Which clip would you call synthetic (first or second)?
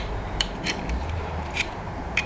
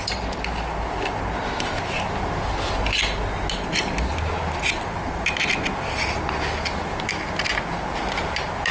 first